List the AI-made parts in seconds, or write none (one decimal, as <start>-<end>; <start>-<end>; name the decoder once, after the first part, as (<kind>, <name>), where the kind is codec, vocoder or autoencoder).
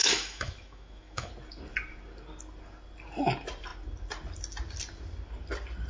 0.0-1.3 (autoencoder, DAC-VAE)